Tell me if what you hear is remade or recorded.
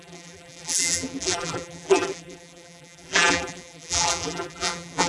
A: remade